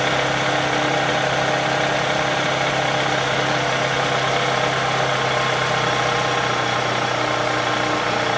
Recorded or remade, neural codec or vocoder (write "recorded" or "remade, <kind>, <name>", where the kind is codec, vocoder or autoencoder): recorded